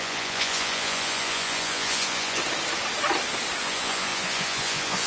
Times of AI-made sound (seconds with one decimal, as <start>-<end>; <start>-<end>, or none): 0.0-2.4; 3.6-5.1